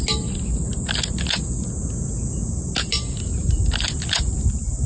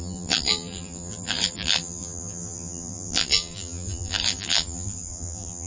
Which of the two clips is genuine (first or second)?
first